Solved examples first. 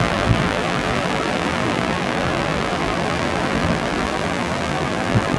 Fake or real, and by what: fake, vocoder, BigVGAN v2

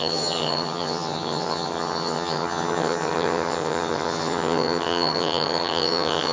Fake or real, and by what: fake, vocoder, HiFi-GAN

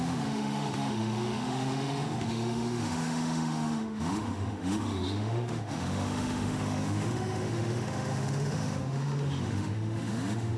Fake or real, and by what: fake, autoencoder, DAC-VAE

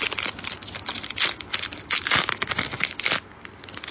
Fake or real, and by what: real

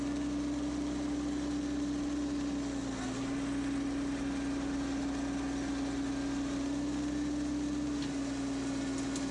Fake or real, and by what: real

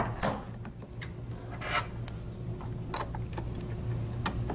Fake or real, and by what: real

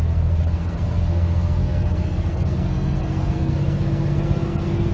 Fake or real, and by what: fake, codec, SNAC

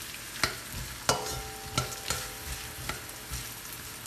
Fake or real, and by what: real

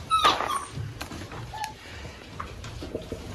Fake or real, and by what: real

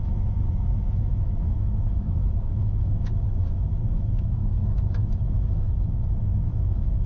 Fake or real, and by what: fake, autoencoder, DAC-VAE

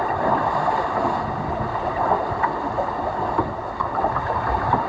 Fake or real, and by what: real